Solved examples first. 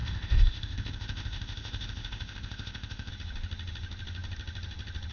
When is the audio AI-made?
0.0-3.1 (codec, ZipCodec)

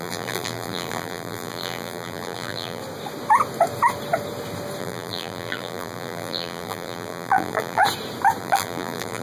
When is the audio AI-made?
0.0-2.8 (vocoder, BigVGAN v2); 4.8-7.8; 8.4-9.2

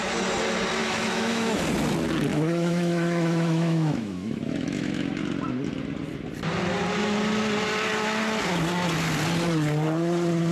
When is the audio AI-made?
0.8-1.6 (autoencoder, DAC-VAE); 2.3-5.2

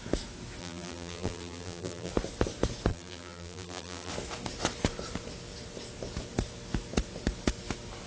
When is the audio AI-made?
0.6-2.1 (vocoder, BigVGAN v2); 2.9-4.1

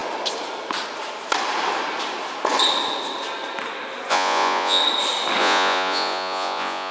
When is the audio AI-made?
4.1-4.8 (vocoder, Vocos); 5.4-6.9